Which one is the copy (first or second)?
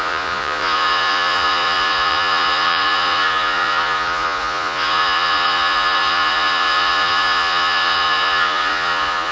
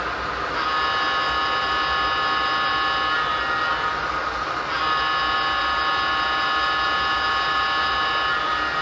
first